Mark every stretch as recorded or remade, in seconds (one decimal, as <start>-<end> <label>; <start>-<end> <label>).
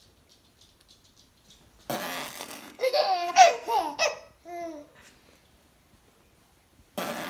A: 0.0-2.4 recorded; 2.4-3.8 remade; 3.8-7.3 recorded